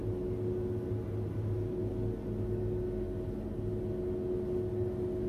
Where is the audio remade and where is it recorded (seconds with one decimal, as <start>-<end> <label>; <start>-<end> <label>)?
0.0-5.3 recorded